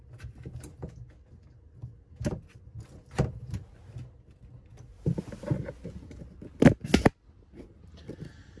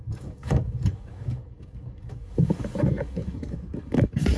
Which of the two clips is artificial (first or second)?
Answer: second